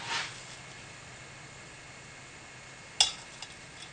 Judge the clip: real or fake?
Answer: real